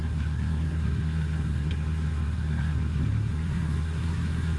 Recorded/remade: remade